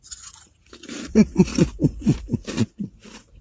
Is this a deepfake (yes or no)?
yes